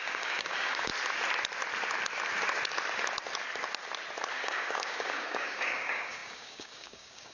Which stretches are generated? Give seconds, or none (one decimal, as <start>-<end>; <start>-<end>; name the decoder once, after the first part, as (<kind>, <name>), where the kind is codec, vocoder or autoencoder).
0.0-0.9 (codec, DAC); 4.3-7.3